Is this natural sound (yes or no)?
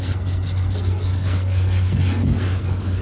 no